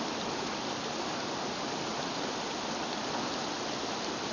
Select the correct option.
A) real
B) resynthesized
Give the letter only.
A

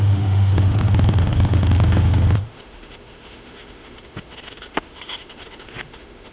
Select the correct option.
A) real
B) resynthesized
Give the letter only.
B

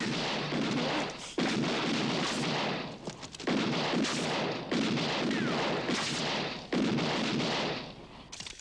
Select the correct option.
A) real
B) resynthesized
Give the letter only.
A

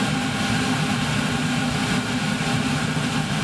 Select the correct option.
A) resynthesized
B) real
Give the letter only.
B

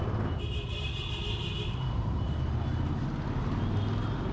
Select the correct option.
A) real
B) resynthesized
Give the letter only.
A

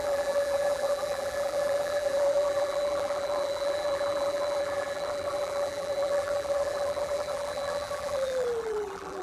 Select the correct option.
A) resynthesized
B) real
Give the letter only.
A